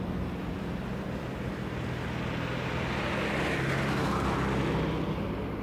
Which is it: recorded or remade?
recorded